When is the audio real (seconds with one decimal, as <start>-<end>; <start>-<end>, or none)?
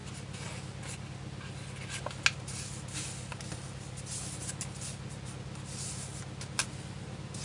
0.0-7.4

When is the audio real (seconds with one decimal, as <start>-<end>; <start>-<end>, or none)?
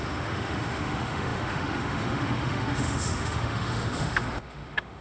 none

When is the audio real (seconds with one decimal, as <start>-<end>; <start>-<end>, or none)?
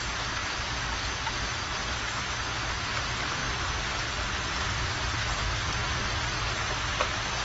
0.0-7.4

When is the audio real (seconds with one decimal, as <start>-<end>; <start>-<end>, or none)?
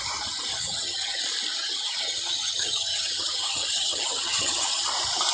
0.0-0.5; 1.2-1.6; 4.8-5.3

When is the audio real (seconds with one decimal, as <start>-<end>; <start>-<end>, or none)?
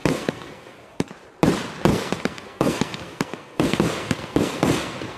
1.1-1.9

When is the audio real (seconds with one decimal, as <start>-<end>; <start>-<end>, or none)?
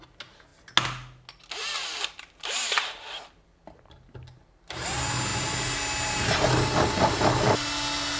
0.0-8.2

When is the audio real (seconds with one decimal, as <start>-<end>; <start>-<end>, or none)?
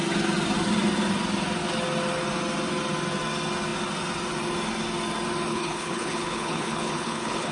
0.0-5.5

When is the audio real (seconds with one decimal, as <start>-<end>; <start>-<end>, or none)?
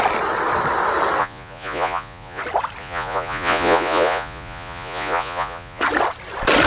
0.0-1.2; 2.4-2.8; 5.8-6.7